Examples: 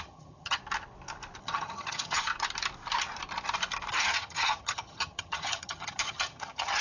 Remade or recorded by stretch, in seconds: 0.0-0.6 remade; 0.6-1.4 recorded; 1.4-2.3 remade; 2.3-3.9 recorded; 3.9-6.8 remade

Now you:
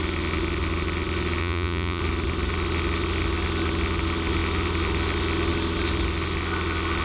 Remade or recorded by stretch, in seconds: 0.0-1.4 recorded; 1.4-2.0 remade; 2.0-7.0 recorded

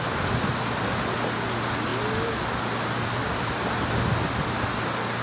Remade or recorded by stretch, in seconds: 0.0-5.2 recorded

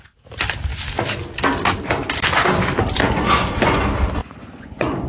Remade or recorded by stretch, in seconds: 0.0-3.0 recorded; 3.0-3.8 remade; 3.8-4.2 recorded; 4.2-5.1 remade

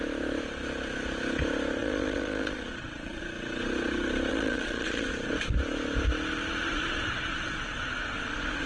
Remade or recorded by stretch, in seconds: 0.0-1.8 recorded; 1.8-3.2 remade; 3.2-4.3 recorded; 4.3-5.1 remade; 5.1-6.7 recorded; 6.7-8.7 remade

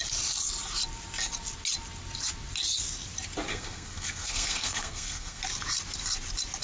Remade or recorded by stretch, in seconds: 0.0-3.5 recorded; 3.5-5.4 remade; 5.4-6.6 recorded

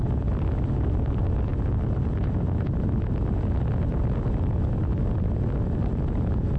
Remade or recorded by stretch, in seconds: 0.0-6.6 recorded

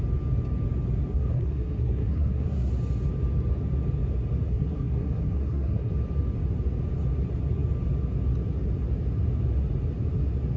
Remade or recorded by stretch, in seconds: 0.0-1.1 recorded; 1.1-2.7 remade; 2.7-4.5 recorded; 4.5-5.9 remade; 5.9-10.6 recorded